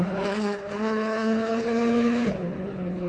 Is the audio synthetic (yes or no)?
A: yes